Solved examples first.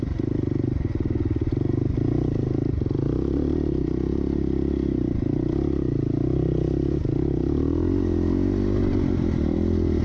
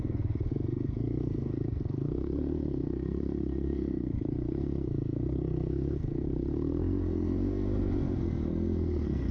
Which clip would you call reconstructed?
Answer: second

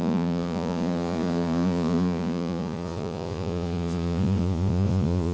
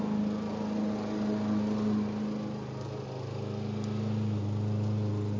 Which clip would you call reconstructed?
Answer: first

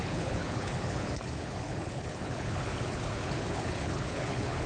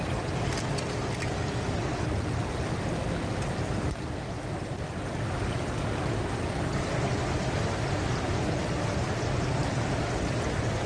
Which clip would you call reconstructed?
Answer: first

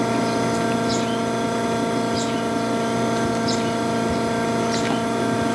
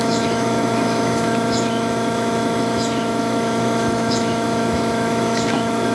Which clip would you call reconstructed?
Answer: second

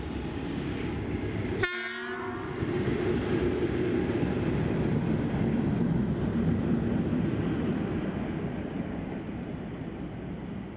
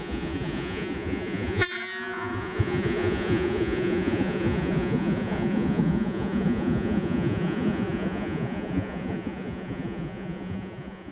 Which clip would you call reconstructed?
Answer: second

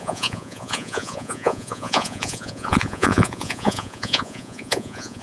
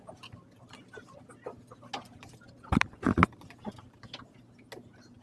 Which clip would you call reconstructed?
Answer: first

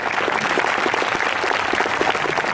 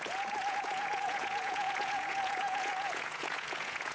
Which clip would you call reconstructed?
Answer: second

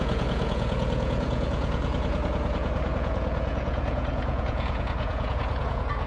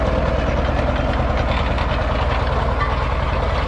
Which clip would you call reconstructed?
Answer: first